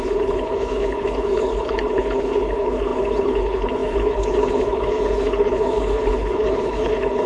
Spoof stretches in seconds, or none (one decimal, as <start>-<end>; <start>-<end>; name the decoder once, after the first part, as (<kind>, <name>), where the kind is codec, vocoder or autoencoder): 0.0-7.3 (codec, HILCodec)